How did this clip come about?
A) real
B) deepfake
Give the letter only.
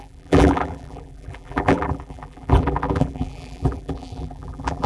B